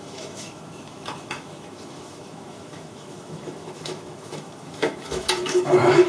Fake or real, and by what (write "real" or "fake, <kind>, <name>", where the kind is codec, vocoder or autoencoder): fake, autoencoder, DAC-VAE